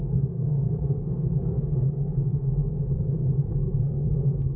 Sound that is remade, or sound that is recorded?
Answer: remade